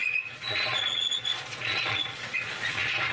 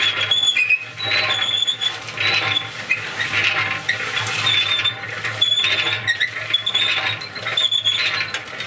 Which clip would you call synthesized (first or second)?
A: first